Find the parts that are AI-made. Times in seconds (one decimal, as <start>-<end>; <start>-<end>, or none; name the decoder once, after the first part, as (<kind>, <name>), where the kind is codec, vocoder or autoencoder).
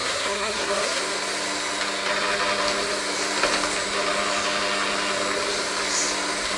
0.0-1.0 (codec, SNAC)